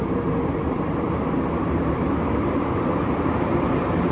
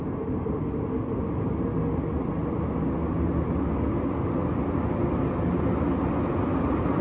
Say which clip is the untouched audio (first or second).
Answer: second